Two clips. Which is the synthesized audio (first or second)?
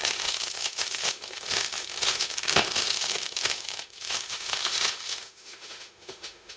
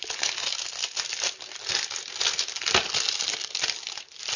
first